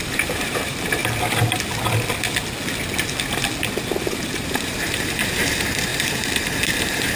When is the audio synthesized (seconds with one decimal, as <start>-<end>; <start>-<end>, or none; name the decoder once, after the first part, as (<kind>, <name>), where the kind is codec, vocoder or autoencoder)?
0.0-1.0 (vocoder, BigVGAN v2); 4.1-7.2